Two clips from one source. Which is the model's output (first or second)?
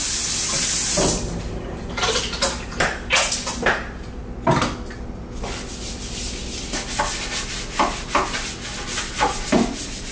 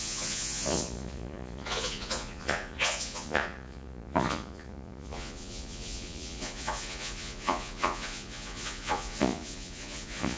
second